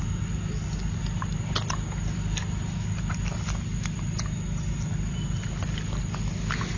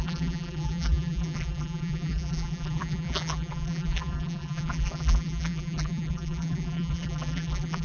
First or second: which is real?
first